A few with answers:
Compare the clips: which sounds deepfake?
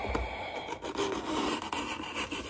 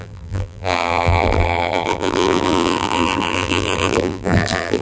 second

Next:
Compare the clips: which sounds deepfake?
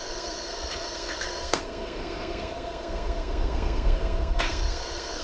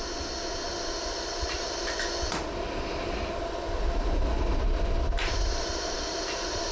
first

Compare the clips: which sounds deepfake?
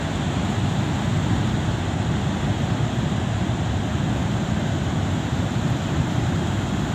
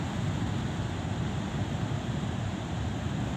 second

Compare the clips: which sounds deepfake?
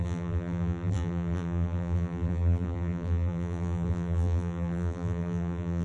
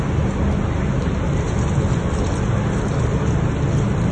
first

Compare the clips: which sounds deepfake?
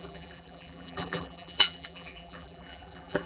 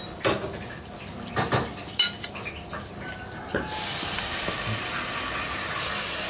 first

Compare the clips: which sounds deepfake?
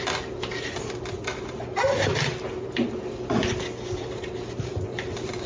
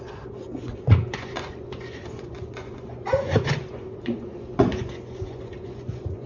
second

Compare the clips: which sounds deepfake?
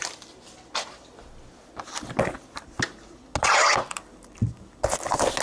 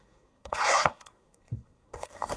second